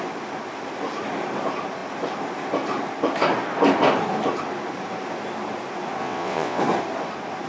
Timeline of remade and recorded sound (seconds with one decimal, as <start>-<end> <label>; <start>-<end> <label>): 0.0-6.0 recorded; 6.0-6.6 remade; 6.6-7.5 recorded